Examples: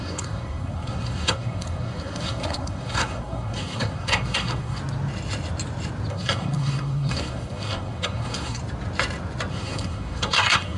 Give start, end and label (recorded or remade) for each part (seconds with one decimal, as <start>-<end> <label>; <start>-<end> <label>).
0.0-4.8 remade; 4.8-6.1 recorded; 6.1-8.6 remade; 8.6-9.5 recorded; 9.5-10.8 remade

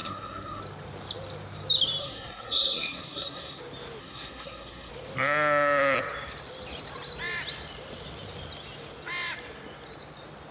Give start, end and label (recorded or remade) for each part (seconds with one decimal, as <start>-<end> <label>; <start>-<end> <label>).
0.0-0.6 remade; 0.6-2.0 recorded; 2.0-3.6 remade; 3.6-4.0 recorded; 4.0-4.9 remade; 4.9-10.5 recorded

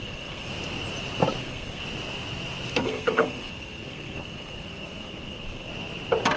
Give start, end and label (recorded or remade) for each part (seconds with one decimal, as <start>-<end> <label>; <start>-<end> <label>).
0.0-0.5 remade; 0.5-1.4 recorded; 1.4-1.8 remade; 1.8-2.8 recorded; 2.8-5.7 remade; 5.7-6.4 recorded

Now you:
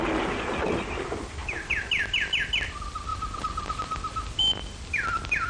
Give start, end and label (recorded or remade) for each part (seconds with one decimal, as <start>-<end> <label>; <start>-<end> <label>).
0.0-5.5 recorded

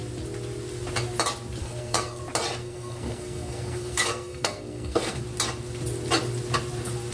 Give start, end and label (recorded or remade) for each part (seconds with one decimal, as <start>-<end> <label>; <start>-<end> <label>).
0.0-1.6 recorded; 1.6-2.2 remade; 2.2-2.6 recorded; 2.6-5.2 remade; 5.2-7.1 recorded